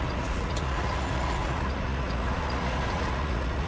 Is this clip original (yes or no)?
no